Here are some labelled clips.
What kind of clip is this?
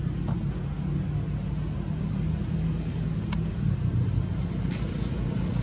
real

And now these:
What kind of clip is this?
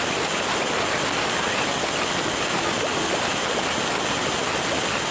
real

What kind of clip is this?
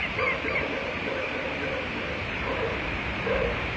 fake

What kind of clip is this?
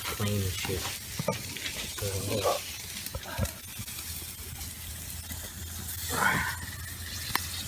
real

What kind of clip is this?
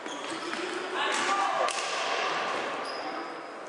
real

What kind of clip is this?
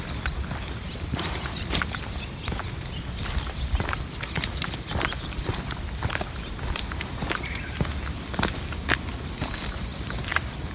fake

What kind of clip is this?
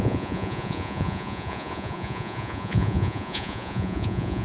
fake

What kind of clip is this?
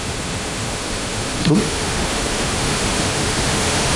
fake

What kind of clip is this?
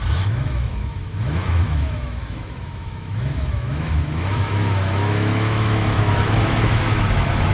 fake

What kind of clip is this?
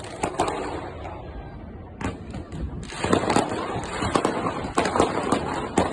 fake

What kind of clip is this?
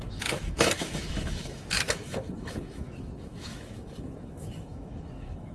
fake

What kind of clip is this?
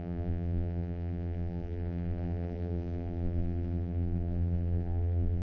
fake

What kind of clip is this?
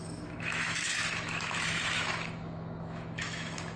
fake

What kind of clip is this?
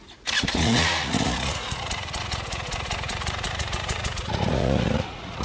fake